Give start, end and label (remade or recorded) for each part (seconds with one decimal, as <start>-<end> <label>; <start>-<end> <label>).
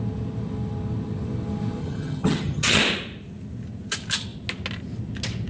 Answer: 0.0-1.8 recorded; 1.8-2.8 remade; 2.8-5.5 recorded